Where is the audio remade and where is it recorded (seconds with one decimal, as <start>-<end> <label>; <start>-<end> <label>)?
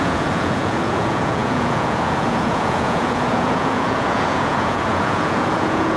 0.0-6.0 remade